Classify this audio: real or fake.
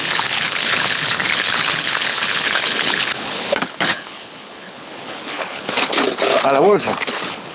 fake